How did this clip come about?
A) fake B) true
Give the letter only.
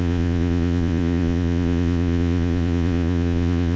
A